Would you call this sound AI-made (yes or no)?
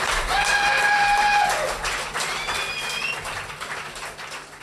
no